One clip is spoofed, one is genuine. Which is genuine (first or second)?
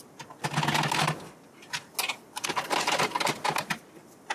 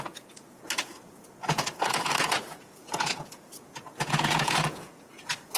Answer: first